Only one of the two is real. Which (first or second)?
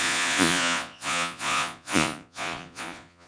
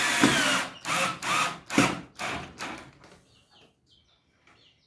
second